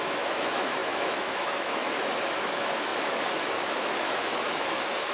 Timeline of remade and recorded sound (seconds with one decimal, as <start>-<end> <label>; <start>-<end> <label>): 0.0-5.1 remade